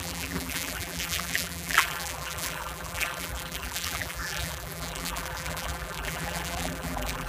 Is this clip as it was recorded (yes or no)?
no